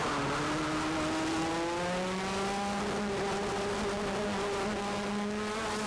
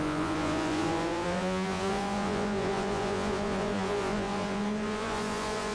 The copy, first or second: second